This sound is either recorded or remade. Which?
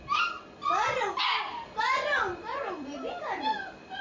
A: recorded